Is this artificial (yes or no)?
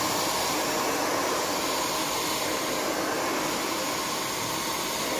no